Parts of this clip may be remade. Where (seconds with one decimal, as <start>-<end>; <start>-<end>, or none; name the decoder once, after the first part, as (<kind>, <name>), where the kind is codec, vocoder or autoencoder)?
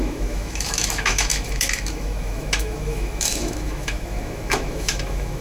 0.0-5.4 (autoencoder, DAC-VAE)